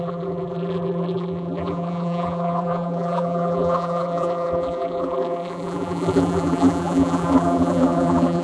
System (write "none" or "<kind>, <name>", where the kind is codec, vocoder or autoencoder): vocoder, BigVGAN v2